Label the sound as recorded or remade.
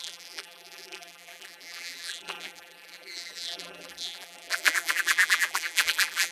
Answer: remade